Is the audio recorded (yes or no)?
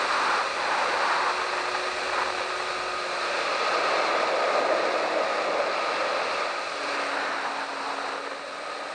yes